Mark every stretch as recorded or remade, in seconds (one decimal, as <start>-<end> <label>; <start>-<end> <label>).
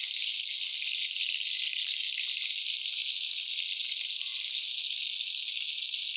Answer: 0.0-6.2 recorded